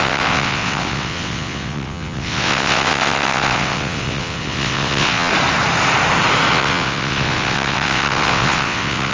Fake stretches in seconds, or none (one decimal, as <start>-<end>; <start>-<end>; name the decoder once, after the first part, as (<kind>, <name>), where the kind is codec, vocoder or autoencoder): 0.0-5.3 (vocoder, WaveNeXt); 6.5-9.1